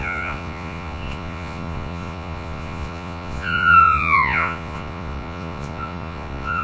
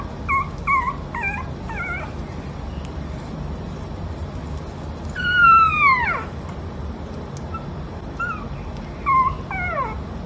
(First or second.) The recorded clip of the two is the second